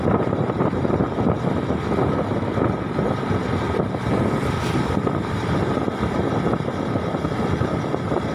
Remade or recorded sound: remade